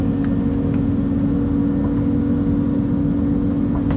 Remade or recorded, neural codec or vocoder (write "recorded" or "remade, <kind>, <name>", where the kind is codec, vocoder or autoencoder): recorded